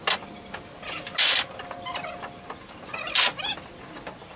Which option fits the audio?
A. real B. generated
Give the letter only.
A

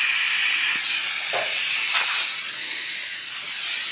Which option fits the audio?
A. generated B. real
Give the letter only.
B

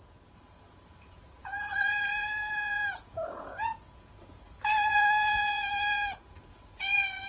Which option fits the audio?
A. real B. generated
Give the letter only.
B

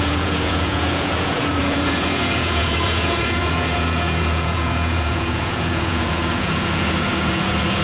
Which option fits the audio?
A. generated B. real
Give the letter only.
A